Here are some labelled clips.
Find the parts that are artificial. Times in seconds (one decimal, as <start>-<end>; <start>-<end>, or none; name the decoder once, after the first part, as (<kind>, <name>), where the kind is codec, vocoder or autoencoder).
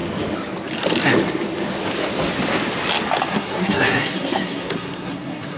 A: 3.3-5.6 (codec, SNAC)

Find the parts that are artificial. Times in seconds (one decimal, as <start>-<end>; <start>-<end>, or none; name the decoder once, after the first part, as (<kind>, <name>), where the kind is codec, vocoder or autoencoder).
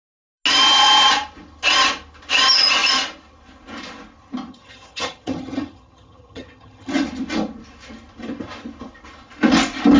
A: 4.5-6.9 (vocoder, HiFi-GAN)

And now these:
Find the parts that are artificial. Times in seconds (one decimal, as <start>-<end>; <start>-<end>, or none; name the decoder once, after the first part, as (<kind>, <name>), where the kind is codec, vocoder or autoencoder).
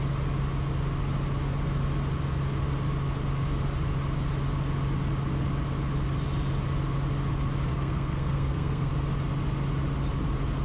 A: 7.7-8.9 (codec, SNAC)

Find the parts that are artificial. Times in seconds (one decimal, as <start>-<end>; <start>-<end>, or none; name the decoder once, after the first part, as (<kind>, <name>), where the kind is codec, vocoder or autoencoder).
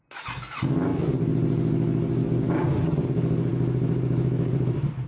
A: 3.5-5.1 (vocoder, BigVGAN v2)